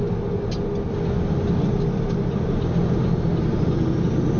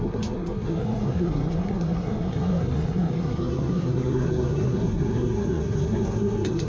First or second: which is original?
first